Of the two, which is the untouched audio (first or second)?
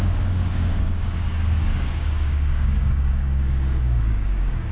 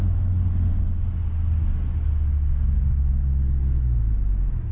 second